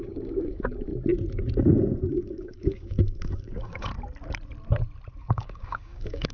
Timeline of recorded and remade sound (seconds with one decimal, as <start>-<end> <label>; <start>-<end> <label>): 0.0-0.9 remade; 0.9-2.1 recorded; 2.1-3.9 remade; 3.9-5.2 recorded; 5.2-6.3 remade